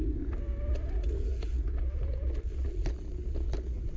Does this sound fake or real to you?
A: real